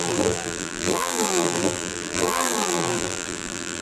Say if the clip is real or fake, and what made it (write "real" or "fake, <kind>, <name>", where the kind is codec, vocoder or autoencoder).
fake, vocoder, BigVGAN v2